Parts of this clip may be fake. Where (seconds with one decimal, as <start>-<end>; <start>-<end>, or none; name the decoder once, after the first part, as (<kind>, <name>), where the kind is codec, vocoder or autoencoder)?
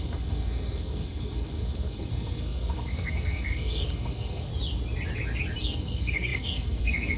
0.0-4.5 (codec, SNAC); 5.6-7.2